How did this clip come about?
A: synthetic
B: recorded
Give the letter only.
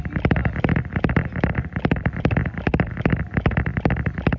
B